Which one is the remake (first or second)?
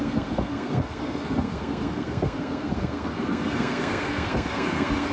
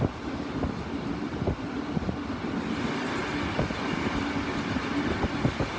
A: first